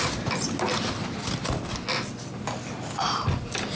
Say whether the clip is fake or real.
real